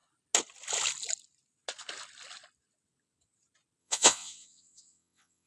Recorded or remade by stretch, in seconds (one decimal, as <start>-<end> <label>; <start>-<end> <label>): 0.0-3.8 recorded; 3.8-5.5 remade